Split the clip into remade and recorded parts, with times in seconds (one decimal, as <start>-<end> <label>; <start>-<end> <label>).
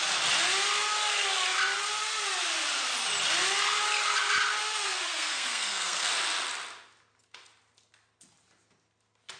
0.0-4.6 recorded; 4.6-6.1 remade; 6.1-9.4 recorded